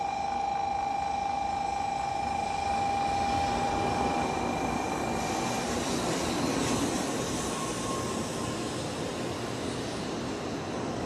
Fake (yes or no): no